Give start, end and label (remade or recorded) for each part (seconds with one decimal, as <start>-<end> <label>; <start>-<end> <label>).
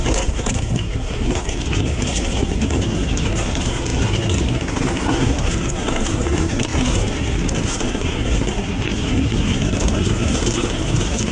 0.0-11.3 remade